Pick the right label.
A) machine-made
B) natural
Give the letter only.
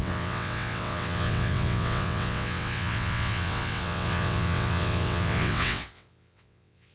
A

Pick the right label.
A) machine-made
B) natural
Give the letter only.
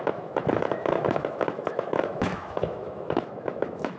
A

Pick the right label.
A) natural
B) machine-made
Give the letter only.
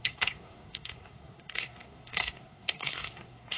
B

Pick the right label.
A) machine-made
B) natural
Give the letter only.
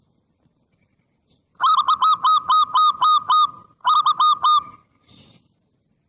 B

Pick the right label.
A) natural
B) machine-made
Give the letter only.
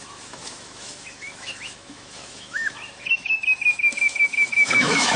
B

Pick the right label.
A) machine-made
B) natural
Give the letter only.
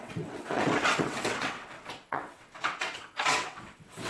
A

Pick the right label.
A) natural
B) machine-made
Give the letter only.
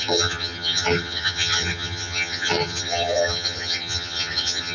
B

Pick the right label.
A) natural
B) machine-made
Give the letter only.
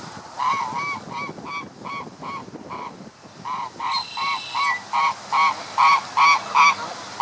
A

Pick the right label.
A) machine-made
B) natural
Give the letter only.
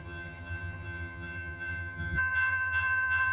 A